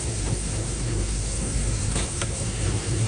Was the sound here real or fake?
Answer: fake